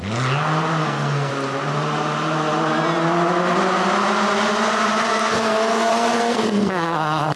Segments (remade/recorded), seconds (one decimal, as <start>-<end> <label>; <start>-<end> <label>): 0.0-0.8 recorded; 0.8-1.3 remade; 1.3-5.1 recorded; 5.1-7.4 remade